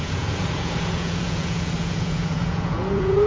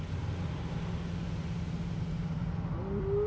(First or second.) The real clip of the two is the second